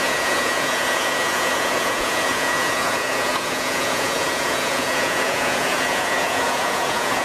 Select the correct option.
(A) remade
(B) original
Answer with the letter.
A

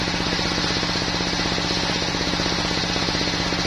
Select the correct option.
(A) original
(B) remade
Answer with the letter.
A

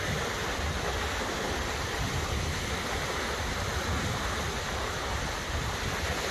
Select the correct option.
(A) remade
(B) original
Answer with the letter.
B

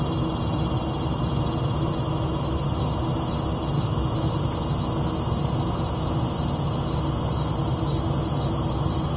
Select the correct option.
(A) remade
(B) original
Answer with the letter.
B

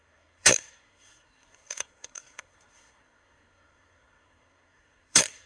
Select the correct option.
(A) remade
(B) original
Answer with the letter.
A